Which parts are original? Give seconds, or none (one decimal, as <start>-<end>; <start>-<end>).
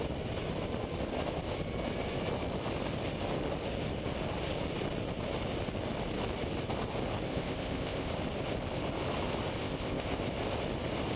0.0-7.3; 8.1-9.6; 10.2-11.2